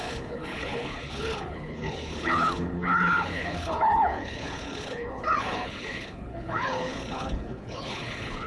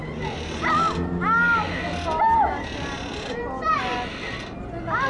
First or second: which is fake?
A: first